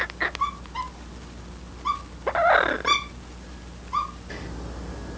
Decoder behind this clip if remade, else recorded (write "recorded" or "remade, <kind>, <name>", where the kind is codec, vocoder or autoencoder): recorded